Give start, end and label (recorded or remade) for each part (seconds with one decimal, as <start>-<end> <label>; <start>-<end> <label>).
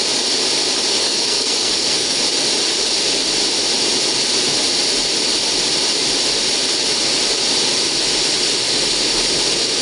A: 0.0-1.0 recorded; 1.0-2.2 remade; 2.2-9.8 recorded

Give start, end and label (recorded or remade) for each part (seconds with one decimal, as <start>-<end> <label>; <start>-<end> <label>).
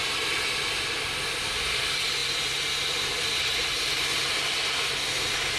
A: 0.0-5.6 recorded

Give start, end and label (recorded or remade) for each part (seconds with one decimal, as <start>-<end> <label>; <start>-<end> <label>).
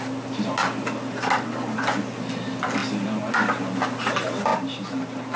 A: 0.0-5.4 recorded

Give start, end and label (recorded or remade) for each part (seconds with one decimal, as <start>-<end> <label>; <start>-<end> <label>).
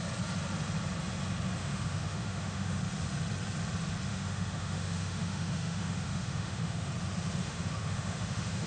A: 0.0-1.6 recorded; 1.6-2.8 remade; 2.8-4.1 recorded; 4.1-6.9 remade; 6.9-7.4 recorded; 7.4-8.7 remade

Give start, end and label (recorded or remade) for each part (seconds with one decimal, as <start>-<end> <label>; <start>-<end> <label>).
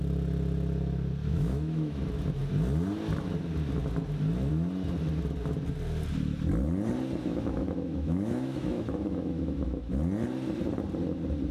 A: 0.0-1.3 recorded; 1.3-2.0 remade; 2.0-7.2 recorded; 7.2-9.9 remade; 9.9-11.5 recorded